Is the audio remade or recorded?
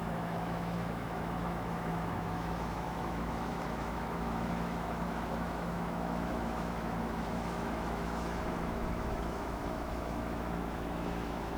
remade